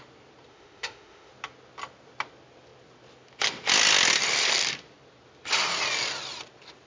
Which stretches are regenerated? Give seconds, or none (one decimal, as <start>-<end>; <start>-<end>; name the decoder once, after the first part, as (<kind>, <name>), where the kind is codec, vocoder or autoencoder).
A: 0.5-1.3 (autoencoder, DAC-VAE)